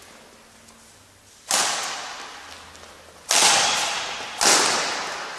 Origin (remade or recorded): recorded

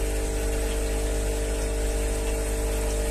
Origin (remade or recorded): recorded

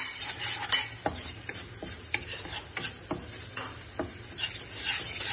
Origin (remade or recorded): recorded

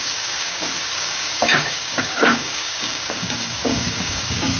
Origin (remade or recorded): remade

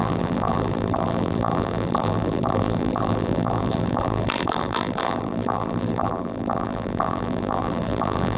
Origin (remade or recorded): remade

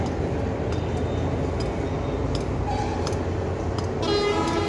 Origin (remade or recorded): recorded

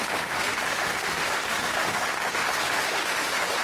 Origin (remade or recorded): remade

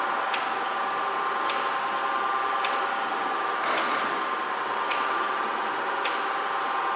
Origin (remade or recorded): recorded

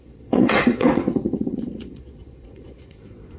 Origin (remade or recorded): remade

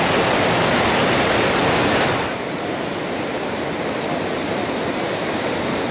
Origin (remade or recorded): recorded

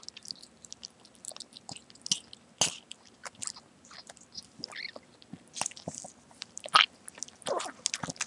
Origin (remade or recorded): recorded